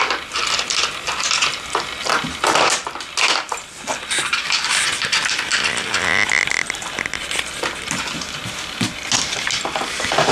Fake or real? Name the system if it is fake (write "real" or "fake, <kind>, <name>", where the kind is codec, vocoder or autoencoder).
real